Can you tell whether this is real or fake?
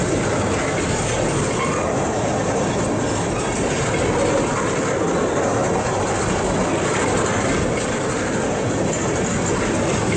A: real